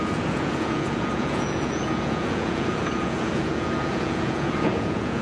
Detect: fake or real fake